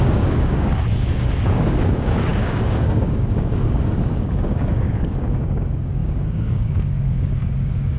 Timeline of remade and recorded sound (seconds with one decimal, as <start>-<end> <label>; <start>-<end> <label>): 0.0-8.0 remade

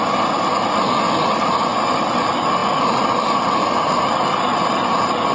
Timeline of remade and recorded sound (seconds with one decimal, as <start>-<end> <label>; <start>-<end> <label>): 0.0-5.3 recorded

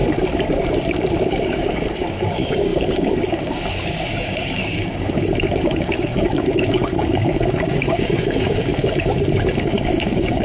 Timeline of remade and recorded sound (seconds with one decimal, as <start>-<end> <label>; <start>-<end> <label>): 0.0-1.2 recorded; 1.2-8.7 remade; 8.7-9.6 recorded; 9.6-10.4 remade

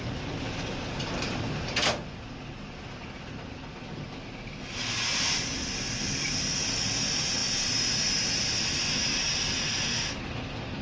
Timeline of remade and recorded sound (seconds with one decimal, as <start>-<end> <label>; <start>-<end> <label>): 0.0-10.8 recorded

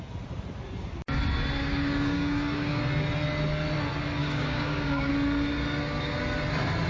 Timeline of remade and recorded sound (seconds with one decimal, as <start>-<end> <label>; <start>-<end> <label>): 0.0-1.6 recorded; 1.6-2.8 remade; 2.8-4.2 recorded; 4.2-5.1 remade; 5.1-6.9 recorded

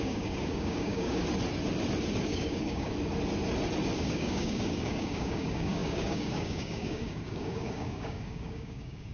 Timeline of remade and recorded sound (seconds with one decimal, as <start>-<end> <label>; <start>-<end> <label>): 0.0-1.2 remade; 1.2-2.2 recorded; 2.2-2.9 remade; 2.9-4.0 recorded; 4.0-9.1 remade

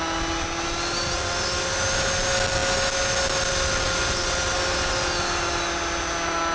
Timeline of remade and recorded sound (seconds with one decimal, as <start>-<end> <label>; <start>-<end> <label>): 0.0-6.5 recorded